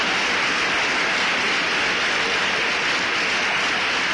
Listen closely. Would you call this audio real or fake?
real